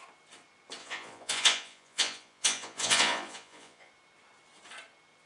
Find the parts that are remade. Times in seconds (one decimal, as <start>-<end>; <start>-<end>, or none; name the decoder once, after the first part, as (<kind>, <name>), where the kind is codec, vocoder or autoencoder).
0.8-3.9 (vocoder, Vocos)

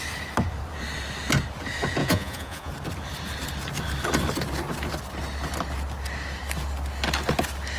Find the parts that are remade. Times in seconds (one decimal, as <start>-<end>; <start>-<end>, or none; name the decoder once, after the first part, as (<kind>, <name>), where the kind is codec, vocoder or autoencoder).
2.0-2.7 (vocoder, Vocos)

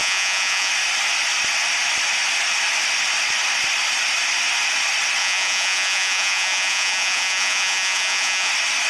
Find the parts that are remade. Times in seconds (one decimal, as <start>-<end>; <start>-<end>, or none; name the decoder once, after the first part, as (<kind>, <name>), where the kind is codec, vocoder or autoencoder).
0.0-0.7 (vocoder, Vocos); 5.2-8.5

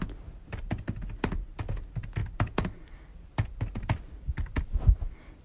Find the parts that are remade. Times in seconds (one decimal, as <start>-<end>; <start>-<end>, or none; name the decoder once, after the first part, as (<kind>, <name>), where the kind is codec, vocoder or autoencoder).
none

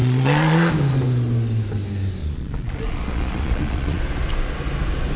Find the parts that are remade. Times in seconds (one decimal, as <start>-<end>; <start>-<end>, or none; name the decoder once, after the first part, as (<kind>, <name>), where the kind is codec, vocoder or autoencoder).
0.0-0.7 (vocoder, Vocos); 2.2-4.0

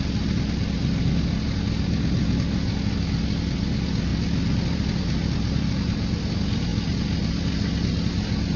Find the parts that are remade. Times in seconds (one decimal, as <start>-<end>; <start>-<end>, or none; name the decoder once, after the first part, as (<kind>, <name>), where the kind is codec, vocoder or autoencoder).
none

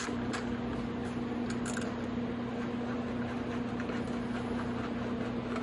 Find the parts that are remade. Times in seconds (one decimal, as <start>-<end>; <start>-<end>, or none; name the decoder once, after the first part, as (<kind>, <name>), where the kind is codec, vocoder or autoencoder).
none

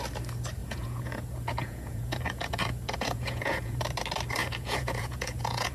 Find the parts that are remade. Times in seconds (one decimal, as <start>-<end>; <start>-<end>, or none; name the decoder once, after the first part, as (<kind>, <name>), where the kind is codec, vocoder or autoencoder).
0.6-3.8 (vocoder, Vocos); 4.4-5.7